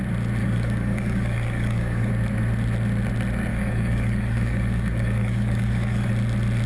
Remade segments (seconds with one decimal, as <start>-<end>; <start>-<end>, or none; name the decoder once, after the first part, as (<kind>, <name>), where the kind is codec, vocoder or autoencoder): 0.4-2.1 (codec, DAC); 3.5-6.1